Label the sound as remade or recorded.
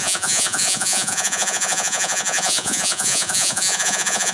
remade